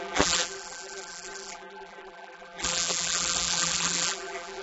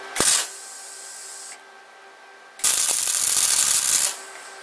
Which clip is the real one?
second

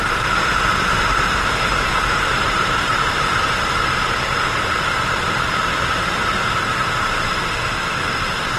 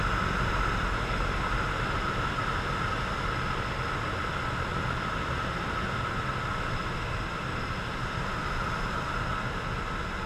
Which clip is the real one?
second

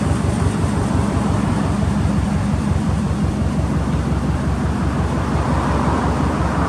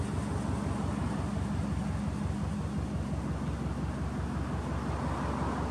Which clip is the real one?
second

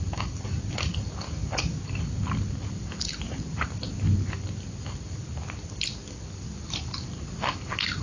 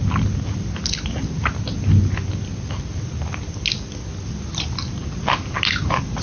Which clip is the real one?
second